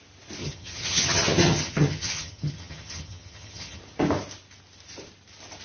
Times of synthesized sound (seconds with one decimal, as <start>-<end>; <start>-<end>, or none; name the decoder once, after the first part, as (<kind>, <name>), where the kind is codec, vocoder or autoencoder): 0.4-3.8 (vocoder, HiFi-GAN)